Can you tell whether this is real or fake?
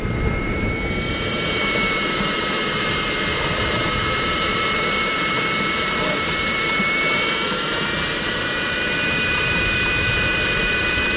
fake